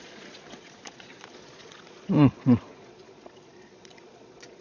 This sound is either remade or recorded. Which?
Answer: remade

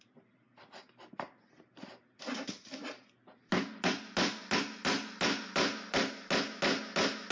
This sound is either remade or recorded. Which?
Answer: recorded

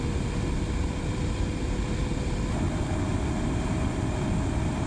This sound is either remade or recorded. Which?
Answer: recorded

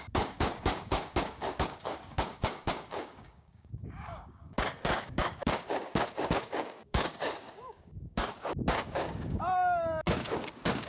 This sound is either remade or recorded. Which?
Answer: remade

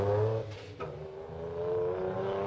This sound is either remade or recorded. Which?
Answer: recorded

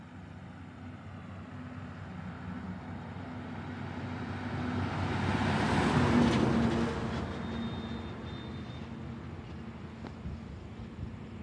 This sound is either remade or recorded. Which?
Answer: recorded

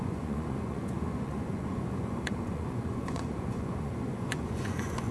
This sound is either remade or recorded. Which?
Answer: remade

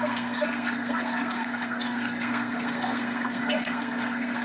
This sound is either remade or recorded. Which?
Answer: remade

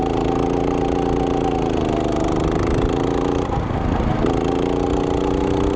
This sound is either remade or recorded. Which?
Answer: recorded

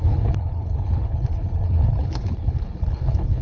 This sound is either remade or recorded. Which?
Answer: remade